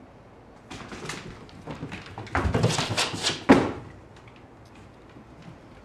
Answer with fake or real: real